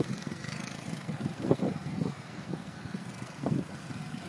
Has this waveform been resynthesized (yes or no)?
yes